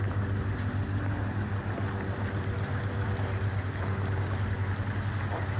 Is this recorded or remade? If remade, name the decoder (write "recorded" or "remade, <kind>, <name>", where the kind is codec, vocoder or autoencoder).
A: recorded